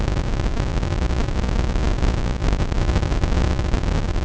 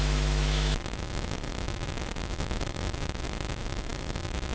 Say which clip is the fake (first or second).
second